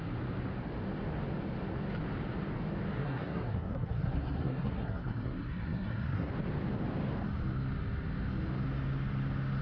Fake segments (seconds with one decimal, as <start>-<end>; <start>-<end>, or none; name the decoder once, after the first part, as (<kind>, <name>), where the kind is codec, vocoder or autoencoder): 2.9-6.3 (codec, SNAC)